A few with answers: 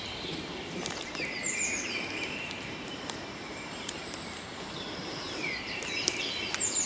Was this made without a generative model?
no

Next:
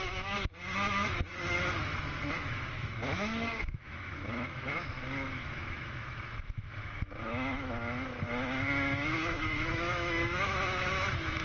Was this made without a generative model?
no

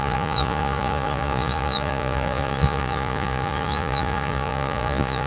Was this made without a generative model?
no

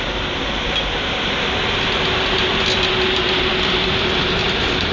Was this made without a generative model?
yes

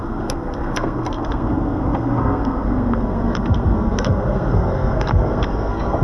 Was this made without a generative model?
no